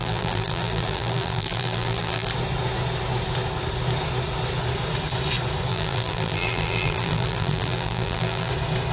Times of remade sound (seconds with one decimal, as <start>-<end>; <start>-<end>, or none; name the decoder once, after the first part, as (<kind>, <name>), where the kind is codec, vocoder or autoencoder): 0.0-2.3 (vocoder, BigVGAN v2); 5.7-8.5